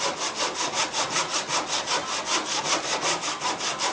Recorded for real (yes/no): yes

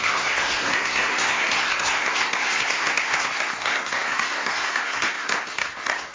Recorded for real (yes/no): no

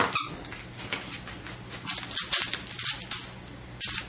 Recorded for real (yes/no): yes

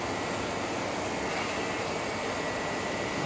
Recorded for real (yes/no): yes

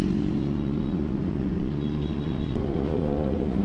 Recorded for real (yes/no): no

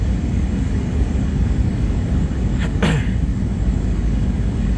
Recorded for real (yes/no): no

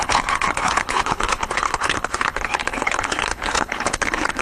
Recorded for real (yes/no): no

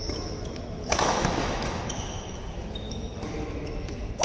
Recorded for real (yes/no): no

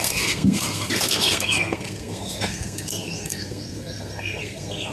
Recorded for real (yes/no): no